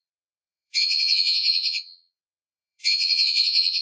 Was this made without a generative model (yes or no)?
no